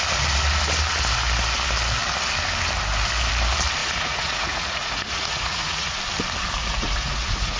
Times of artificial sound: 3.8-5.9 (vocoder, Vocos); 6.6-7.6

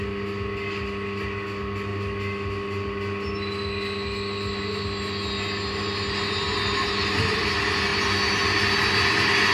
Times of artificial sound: none

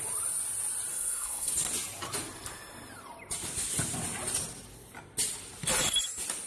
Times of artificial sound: 0.9-1.5 (codec, SNAC)